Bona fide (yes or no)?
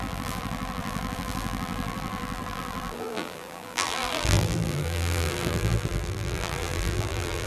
no